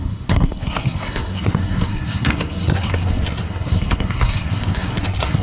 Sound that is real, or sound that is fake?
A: fake